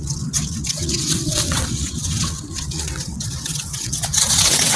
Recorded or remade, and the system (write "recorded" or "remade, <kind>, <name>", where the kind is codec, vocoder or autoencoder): remade, vocoder, WaveNeXt